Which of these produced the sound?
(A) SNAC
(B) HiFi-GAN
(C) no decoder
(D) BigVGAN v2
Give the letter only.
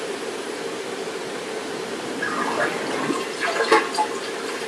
D